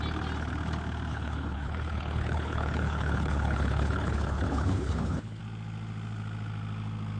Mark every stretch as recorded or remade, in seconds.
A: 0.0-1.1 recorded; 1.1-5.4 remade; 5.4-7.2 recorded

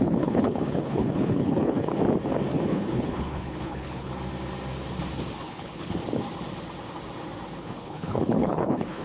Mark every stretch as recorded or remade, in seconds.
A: 0.0-1.9 remade; 1.9-2.5 recorded; 2.5-4.1 remade; 4.1-5.3 recorded; 5.3-6.0 remade; 6.0-7.6 recorded; 7.6-9.0 remade

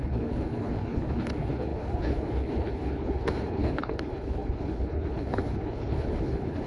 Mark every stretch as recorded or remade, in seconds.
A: 0.0-6.7 remade